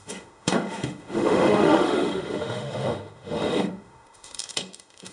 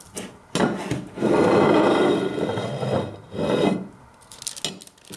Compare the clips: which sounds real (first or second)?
second